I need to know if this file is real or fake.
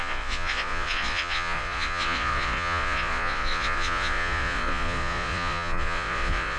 fake